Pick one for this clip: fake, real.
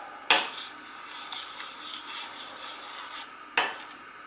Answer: real